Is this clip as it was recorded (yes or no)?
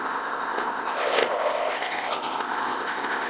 no